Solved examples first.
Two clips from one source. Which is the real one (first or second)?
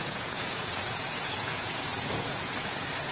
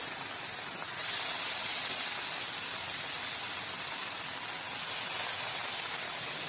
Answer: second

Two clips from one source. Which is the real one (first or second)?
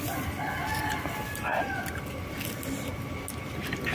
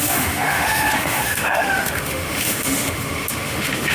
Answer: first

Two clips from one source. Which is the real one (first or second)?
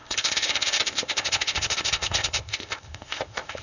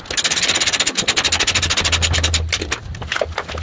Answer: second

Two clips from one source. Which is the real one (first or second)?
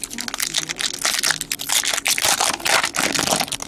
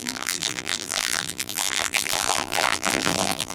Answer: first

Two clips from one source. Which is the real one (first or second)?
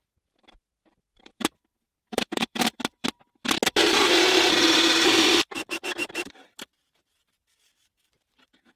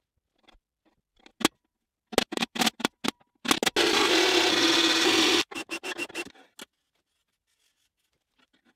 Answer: second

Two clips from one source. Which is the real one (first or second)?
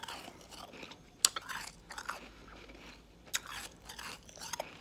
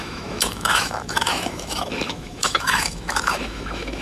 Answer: first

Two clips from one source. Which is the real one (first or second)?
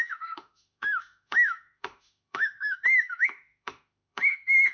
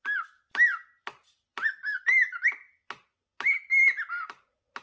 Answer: second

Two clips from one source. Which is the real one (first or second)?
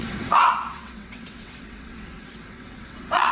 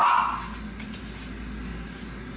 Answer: second